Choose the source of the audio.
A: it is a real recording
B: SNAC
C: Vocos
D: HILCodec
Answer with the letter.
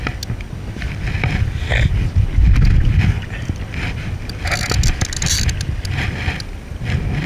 A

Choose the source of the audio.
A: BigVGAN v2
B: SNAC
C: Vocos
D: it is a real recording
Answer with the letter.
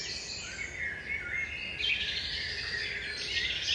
D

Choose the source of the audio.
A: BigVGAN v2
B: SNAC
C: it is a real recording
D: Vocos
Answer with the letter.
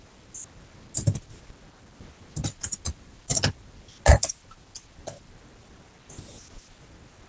C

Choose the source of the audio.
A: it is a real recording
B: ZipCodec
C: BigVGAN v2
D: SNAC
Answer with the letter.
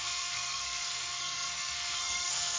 D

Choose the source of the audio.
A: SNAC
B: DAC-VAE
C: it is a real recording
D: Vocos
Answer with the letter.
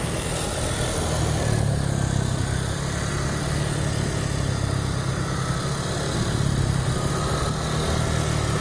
C